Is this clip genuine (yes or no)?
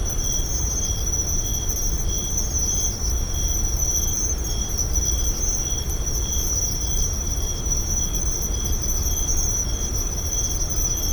yes